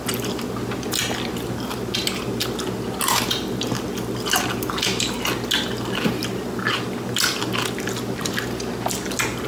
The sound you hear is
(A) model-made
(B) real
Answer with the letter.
B